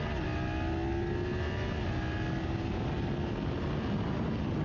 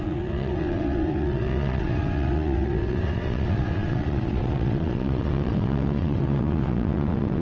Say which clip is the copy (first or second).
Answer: second